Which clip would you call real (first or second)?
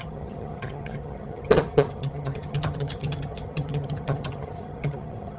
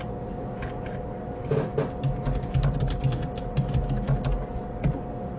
second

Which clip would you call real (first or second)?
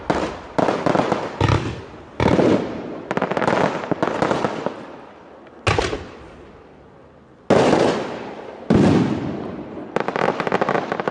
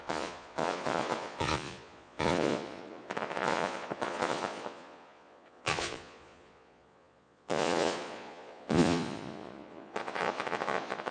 first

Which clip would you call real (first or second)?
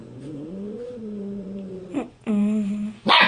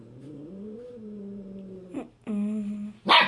second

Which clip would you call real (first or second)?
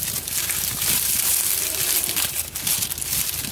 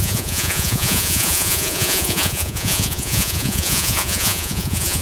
first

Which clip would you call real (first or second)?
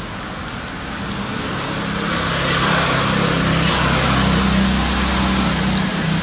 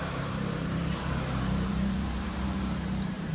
first